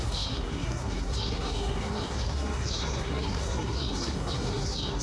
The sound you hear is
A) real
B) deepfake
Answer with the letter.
B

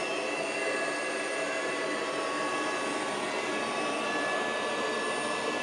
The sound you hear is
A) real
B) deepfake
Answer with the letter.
A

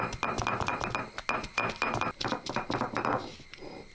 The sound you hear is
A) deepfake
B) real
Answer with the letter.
B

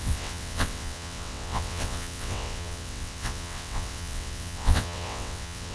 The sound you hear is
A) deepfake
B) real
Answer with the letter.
A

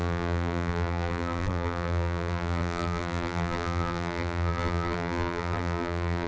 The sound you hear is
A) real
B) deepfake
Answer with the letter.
B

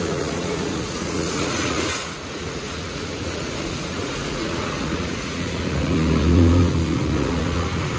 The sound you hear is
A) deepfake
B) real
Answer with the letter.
A